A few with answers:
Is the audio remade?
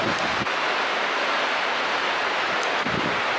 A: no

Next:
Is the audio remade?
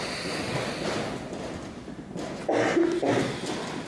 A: no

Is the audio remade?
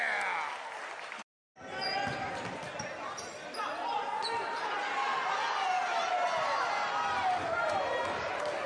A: no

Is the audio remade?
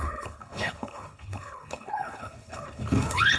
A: yes